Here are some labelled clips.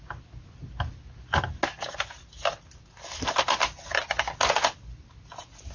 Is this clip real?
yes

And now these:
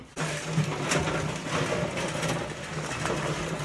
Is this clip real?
yes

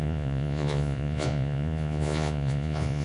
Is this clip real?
no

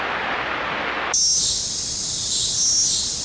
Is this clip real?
yes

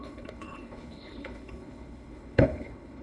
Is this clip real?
no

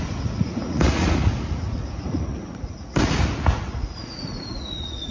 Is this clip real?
no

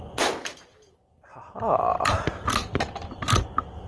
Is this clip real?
yes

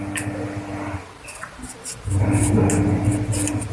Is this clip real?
yes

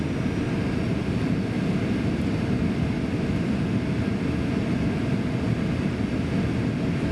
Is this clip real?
yes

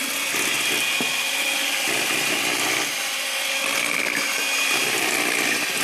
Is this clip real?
yes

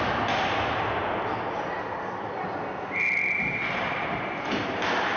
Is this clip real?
yes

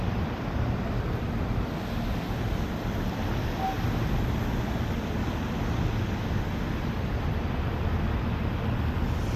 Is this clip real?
yes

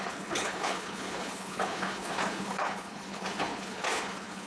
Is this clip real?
no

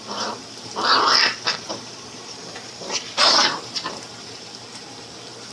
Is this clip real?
no